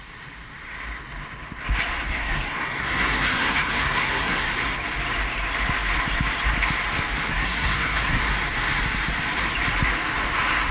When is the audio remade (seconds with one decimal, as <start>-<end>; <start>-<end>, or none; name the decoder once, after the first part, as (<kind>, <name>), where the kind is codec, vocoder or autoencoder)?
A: 2.1-4.5 (codec, SNAC); 7.3-8.2